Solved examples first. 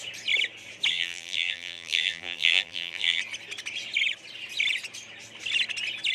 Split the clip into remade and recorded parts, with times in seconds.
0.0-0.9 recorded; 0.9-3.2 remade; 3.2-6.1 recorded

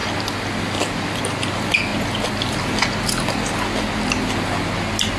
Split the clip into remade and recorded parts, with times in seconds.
0.0-1.2 remade; 1.2-5.2 recorded